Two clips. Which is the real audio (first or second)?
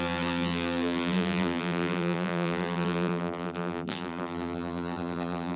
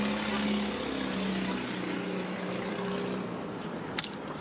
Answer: second